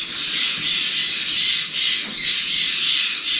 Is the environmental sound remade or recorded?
recorded